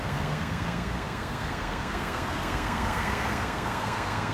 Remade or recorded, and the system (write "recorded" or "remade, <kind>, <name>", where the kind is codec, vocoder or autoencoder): remade, codec, SNAC